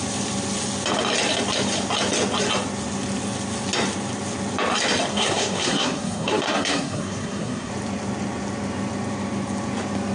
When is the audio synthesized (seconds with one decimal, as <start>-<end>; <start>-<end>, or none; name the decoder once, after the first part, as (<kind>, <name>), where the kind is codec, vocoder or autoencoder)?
5.1-7.7 (codec, SNAC)

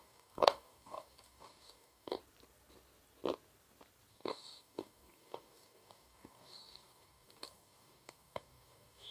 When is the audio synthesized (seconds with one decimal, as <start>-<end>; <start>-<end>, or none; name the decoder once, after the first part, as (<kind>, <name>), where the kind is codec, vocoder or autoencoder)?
0.0-2.2 (codec, DAC); 4.1-9.1

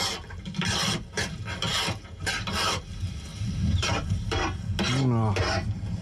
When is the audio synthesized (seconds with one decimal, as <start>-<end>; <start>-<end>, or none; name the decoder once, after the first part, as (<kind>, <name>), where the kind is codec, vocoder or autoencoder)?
1.7-2.8 (vocoder, BigVGAN v2); 3.3-4.6

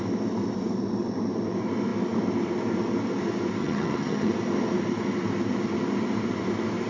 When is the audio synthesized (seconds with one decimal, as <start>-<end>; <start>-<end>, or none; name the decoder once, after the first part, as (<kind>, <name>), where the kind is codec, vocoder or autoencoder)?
3.6-4.3 (vocoder, HiFi-GAN)

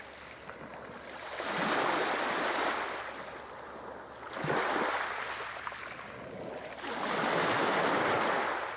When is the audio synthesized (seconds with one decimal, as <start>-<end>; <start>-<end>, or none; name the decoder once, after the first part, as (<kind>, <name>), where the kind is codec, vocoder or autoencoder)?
none

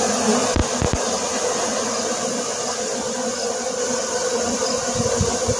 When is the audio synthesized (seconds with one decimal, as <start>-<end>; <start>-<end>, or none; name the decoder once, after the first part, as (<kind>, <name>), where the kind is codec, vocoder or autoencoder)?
none